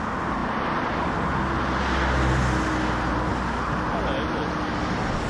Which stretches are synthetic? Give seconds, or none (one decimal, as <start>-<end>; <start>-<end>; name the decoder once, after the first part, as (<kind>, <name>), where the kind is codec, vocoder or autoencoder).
none